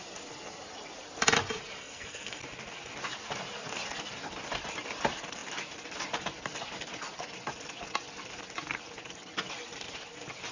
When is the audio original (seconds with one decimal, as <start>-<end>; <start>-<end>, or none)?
0.0-1.8; 2.4-10.5